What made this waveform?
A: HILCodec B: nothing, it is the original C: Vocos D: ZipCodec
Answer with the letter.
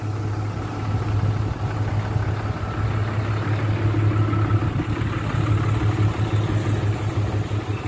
B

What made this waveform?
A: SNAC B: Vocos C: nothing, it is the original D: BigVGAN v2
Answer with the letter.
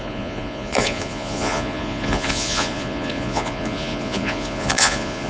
B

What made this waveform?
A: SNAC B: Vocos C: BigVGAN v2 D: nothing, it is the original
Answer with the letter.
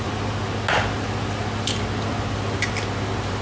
D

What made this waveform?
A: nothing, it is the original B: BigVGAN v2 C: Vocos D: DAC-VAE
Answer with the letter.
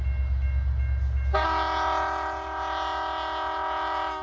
A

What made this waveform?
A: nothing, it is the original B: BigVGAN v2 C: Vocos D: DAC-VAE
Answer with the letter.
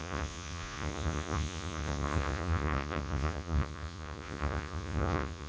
C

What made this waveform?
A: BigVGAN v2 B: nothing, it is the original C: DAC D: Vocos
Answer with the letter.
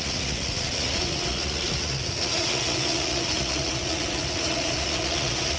D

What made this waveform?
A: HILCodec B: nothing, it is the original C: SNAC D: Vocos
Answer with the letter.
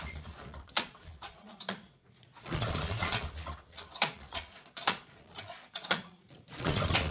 D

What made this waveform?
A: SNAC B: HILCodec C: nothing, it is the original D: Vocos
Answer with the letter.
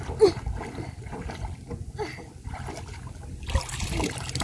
C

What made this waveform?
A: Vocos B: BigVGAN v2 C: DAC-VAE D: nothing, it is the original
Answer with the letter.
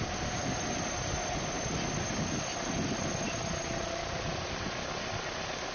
D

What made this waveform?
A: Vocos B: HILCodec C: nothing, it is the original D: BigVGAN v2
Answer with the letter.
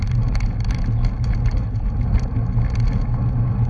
C